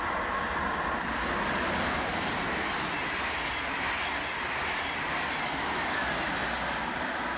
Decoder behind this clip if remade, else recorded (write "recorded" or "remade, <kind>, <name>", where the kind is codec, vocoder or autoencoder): recorded